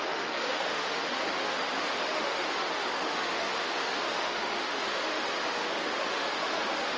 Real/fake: fake